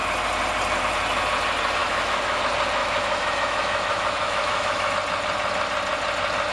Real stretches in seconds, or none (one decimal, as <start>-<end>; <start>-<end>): 0.0-1.8; 2.4-2.8; 4.9-6.5